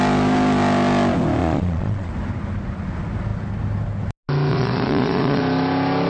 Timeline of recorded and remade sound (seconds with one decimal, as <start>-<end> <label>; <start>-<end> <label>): 0.0-1.4 recorded; 1.4-2.1 remade; 2.1-4.5 recorded; 4.5-5.4 remade; 5.4-6.1 recorded